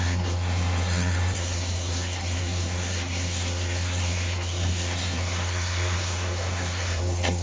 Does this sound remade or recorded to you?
remade